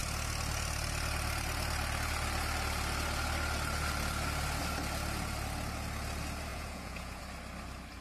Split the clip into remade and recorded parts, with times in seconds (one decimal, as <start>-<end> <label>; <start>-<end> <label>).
0.0-6.5 recorded; 6.5-7.2 remade; 7.2-8.0 recorded